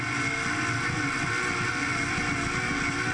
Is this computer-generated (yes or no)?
no